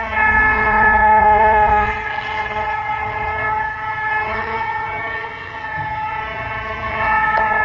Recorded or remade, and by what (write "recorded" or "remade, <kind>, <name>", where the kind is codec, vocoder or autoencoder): remade, vocoder, HiFi-GAN